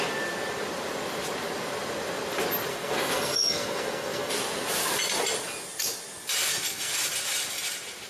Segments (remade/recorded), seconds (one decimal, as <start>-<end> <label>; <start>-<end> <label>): 0.0-2.7 recorded; 2.7-4.3 remade; 4.3-6.4 recorded; 6.4-7.0 remade; 7.0-8.1 recorded